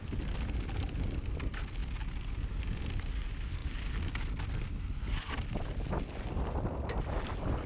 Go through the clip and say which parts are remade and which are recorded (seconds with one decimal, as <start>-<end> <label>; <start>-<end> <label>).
0.0-7.7 recorded